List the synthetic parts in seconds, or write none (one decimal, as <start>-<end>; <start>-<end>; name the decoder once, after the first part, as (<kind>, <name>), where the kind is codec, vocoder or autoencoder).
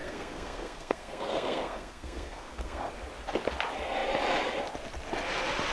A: 0.0-2.9 (codec, SNAC)